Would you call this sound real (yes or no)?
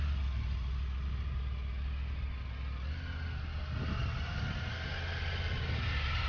yes